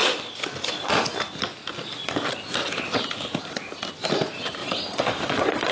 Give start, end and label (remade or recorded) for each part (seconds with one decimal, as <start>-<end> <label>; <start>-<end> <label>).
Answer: 0.0-4.6 recorded; 4.6-5.7 remade